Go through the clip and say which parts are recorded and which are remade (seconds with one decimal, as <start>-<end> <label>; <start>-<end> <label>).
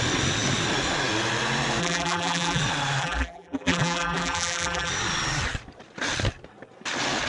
0.0-1.8 recorded; 1.8-2.6 remade; 2.6-3.0 recorded; 3.0-4.9 remade; 4.9-7.3 recorded